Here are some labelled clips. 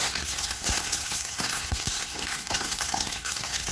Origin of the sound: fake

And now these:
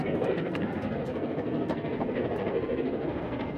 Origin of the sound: fake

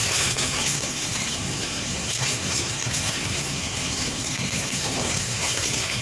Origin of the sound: fake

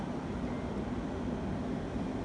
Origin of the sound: real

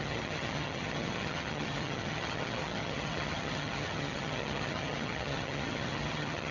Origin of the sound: fake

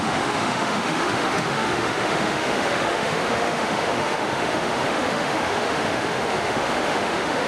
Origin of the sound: fake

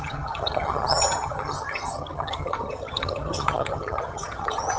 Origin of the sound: fake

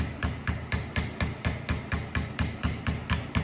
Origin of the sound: real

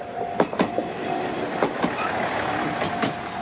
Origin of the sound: real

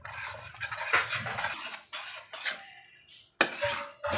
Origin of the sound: real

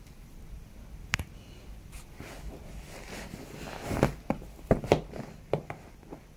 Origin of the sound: real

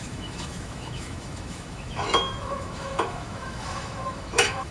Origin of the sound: fake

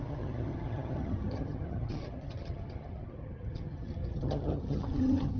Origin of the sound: fake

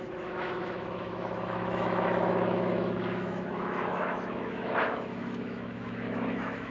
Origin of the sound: fake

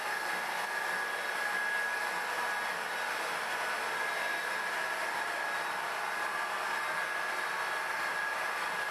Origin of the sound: real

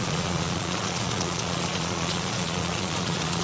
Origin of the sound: fake